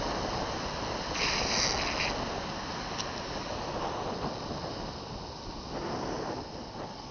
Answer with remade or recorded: recorded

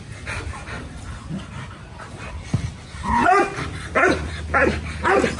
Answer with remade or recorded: recorded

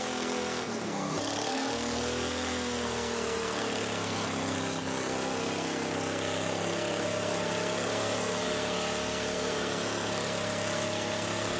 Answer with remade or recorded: remade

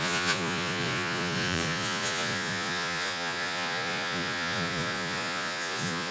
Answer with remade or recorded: remade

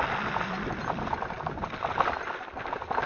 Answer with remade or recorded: recorded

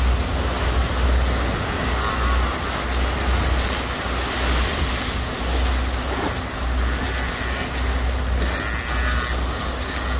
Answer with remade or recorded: recorded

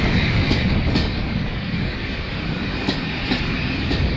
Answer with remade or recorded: remade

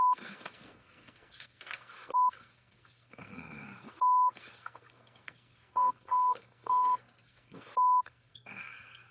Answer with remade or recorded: remade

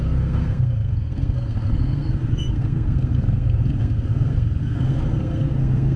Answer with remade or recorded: remade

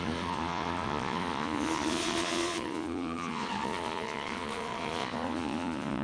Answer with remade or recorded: remade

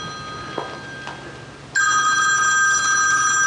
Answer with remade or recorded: recorded